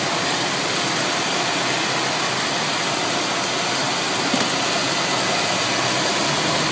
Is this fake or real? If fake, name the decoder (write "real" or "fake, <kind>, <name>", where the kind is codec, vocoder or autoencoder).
real